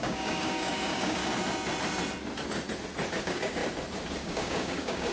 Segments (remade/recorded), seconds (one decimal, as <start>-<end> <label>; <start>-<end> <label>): 0.0-1.2 remade; 1.2-3.2 recorded; 3.2-3.6 remade; 3.6-4.2 recorded; 4.2-5.1 remade